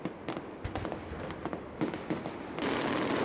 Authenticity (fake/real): real